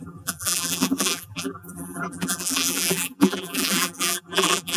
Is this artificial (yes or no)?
yes